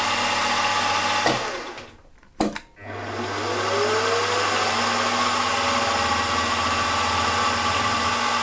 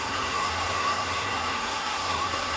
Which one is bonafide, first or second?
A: first